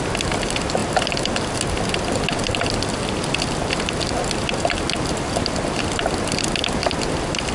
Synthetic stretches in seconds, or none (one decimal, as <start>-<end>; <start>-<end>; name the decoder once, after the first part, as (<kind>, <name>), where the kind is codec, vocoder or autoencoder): none